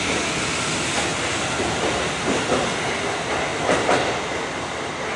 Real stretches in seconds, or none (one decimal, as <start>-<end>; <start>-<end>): 0.0-5.2